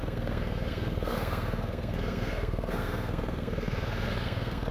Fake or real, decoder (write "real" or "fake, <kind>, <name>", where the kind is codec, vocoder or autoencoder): fake, codec, SNAC